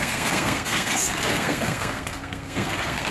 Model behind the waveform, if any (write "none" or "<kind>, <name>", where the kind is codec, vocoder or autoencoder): codec, SNAC